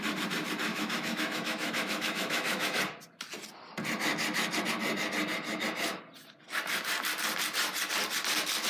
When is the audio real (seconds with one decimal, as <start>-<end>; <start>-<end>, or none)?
0.0-0.7; 2.8-8.7